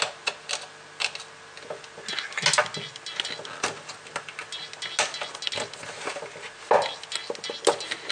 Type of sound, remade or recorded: recorded